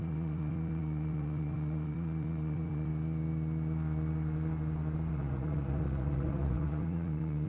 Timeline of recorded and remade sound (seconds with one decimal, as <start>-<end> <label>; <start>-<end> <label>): 0.0-2.9 remade; 2.9-5.1 recorded; 5.1-7.5 remade